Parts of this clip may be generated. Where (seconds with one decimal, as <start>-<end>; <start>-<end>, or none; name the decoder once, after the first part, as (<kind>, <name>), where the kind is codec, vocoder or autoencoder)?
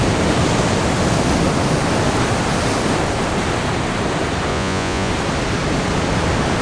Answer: 4.5-5.1 (vocoder, Vocos)